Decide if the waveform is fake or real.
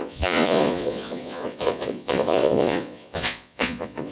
fake